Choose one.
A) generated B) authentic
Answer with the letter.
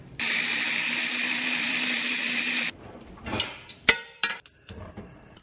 A